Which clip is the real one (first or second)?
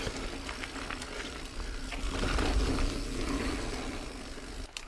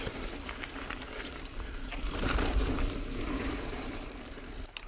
first